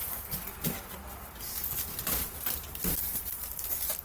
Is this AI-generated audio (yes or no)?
no